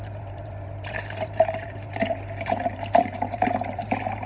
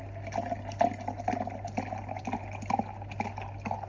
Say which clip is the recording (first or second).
second